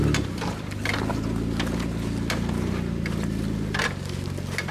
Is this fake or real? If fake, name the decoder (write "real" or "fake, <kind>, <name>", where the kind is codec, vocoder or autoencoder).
real